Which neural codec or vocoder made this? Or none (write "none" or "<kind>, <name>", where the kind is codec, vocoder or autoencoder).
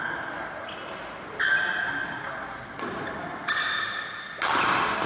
none